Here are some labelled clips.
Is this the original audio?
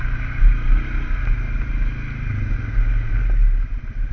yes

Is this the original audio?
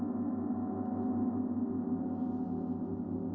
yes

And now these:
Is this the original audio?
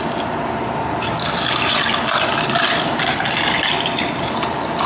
yes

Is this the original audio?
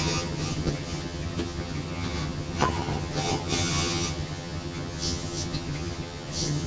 no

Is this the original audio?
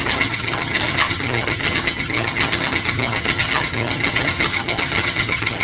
no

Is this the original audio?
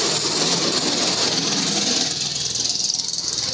yes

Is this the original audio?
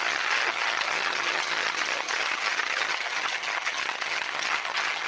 no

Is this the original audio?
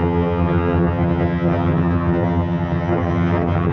no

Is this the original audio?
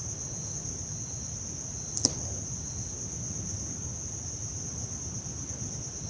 yes